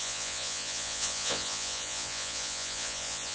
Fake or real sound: fake